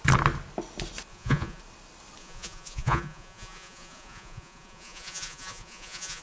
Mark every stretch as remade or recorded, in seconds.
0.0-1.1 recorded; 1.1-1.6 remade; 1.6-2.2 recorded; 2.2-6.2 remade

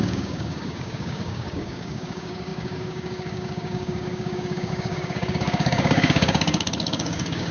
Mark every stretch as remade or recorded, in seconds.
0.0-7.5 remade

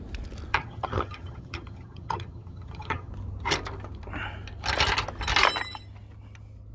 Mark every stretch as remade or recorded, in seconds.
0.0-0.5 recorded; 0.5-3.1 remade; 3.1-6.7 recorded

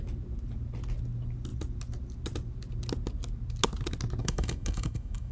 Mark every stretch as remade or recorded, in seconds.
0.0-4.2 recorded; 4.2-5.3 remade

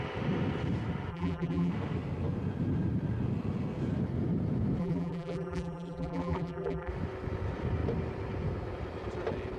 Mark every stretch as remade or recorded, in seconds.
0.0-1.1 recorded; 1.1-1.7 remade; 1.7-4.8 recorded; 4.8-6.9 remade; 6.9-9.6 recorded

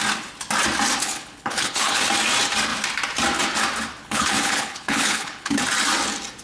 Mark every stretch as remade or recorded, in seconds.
0.0-1.0 recorded; 1.0-2.0 remade; 2.0-4.0 recorded; 4.0-5.6 remade; 5.6-6.4 recorded

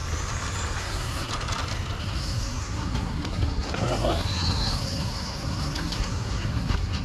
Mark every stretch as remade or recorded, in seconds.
0.0-0.8 recorded; 0.8-1.3 remade; 1.3-2.0 recorded; 2.0-7.0 remade